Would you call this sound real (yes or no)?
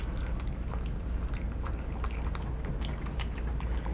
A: yes